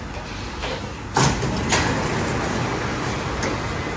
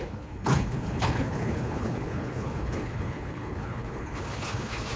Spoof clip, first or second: second